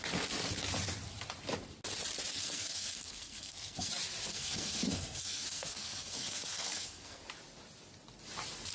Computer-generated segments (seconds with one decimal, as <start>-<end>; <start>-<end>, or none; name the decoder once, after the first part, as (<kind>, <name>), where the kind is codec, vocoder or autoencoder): 2.3-3.9 (codec, SNAC); 4.3-7.2